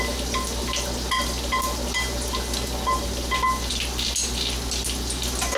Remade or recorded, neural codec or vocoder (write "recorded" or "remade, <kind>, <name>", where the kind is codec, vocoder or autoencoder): recorded